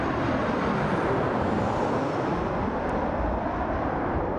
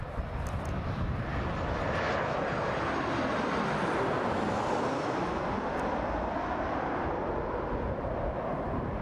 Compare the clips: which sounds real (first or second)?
second